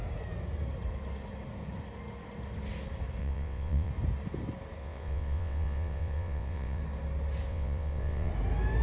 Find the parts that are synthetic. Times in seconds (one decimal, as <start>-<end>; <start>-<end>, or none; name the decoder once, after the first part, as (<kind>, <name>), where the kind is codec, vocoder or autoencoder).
3.2-3.9 (vocoder, WaveNeXt); 4.8-6.8; 7.5-8.3